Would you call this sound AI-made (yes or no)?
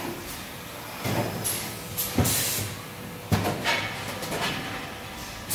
no